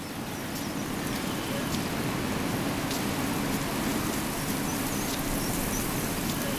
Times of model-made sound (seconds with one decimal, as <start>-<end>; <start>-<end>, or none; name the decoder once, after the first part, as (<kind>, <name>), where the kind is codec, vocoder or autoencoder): none